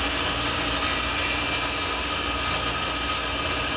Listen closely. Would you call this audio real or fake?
real